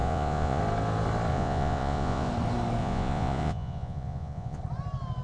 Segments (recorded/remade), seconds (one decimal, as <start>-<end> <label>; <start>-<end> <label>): 0.0-0.6 remade; 0.6-1.3 recorded; 1.3-2.3 remade; 2.3-2.8 recorded; 2.8-4.6 remade; 4.6-5.2 recorded